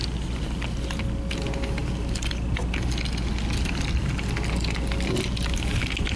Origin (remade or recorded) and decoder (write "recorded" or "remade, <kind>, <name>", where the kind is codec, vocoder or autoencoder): recorded